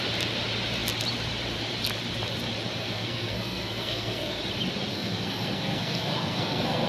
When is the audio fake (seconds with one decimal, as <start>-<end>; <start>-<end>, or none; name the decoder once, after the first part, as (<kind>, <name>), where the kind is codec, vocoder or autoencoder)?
2.8-4.4 (codec, SNAC); 4.9-6.9